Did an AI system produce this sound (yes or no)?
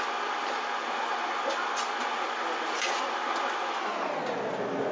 no